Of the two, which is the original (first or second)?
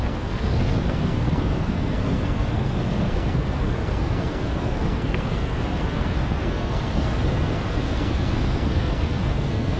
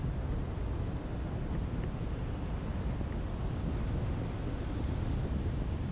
second